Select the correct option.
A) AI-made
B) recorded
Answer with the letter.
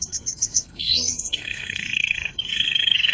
A